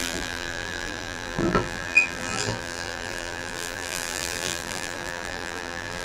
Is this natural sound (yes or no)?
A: no